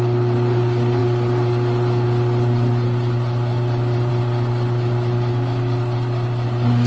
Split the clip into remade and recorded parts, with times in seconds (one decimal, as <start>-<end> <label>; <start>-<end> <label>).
0.0-6.9 recorded